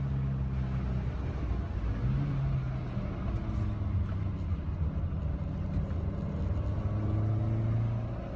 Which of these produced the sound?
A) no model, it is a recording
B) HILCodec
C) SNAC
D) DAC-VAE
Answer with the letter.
A